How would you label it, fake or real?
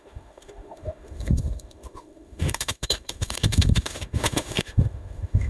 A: fake